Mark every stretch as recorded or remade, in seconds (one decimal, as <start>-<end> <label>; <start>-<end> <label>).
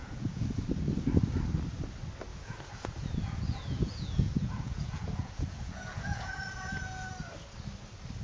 0.0-0.6 remade; 0.6-2.3 recorded; 2.3-7.1 remade; 7.1-8.2 recorded